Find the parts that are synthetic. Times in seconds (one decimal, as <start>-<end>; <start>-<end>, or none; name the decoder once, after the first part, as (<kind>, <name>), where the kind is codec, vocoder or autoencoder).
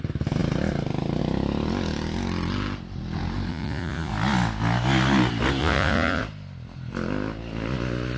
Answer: 3.5-4.1 (vocoder, Vocos); 5.6-6.2